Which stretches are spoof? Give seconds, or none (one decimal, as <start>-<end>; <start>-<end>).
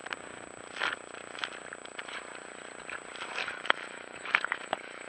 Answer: 3.4-5.1